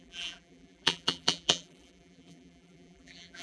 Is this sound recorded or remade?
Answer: remade